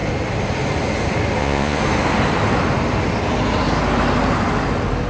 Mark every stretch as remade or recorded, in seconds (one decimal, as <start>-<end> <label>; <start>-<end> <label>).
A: 0.0-1.4 recorded; 1.4-1.8 remade; 1.8-5.1 recorded